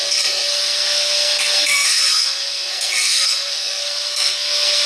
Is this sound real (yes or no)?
no